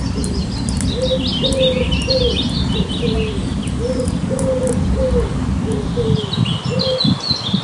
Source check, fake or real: real